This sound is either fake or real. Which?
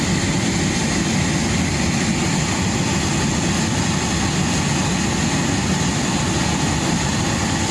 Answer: real